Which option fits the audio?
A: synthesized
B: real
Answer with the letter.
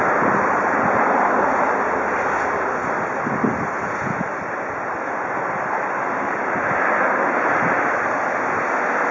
B